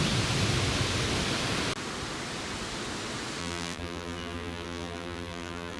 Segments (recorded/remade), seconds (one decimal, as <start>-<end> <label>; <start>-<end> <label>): 0.0-3.4 recorded; 3.4-5.8 remade